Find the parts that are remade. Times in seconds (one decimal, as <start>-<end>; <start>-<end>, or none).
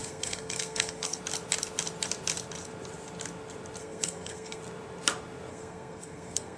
0.0-1.2; 3.8-4.6; 5.5-6.6